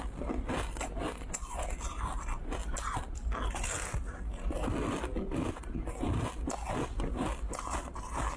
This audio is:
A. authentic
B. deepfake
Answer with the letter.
A